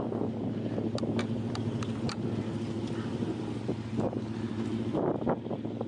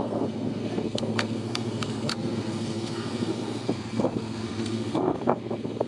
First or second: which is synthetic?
second